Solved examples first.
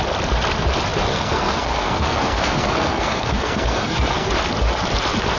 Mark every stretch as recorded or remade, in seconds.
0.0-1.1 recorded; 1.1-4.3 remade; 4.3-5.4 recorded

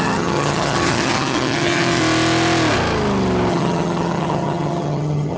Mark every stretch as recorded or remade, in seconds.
0.0-2.0 remade; 2.0-3.5 recorded; 3.5-5.4 remade

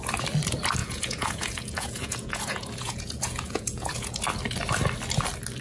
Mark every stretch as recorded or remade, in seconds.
0.0-0.8 recorded; 0.8-4.2 remade; 4.2-5.6 recorded

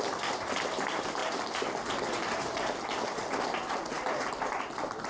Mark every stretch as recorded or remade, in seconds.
0.0-5.1 recorded